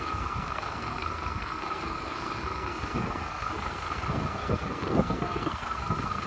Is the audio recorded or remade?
remade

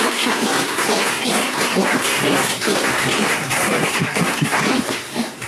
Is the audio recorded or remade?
remade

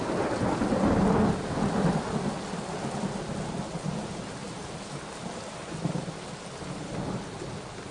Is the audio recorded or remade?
recorded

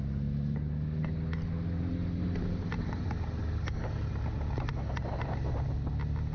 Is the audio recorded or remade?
recorded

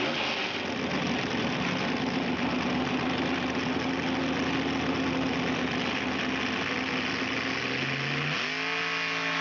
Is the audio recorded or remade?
recorded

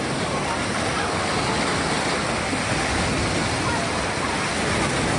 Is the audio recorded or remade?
recorded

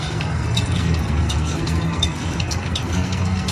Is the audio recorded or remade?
remade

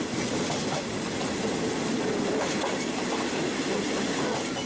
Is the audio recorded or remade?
recorded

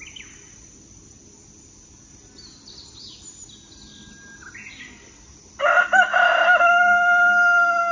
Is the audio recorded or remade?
recorded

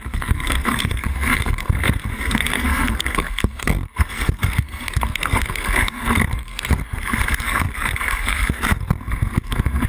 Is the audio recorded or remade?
remade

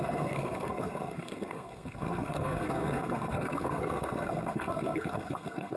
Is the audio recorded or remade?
remade